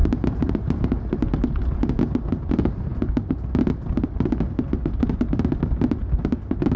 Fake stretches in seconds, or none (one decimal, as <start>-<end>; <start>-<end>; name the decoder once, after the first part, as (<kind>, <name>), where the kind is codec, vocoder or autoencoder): none